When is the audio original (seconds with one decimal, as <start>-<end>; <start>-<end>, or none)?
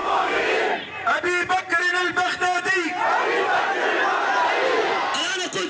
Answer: 0.6-5.7